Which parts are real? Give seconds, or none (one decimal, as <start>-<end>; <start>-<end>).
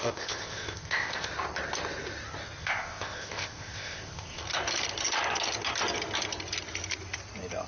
1.3-2.6; 4.4-7.7